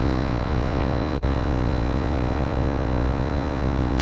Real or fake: fake